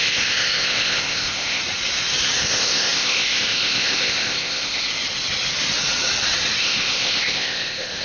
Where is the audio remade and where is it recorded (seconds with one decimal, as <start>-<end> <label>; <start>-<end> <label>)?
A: 0.0-1.6 remade; 1.6-2.4 recorded; 2.4-4.9 remade; 4.9-6.6 recorded; 6.6-8.0 remade